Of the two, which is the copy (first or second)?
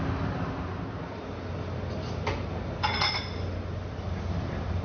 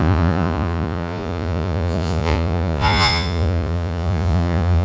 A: second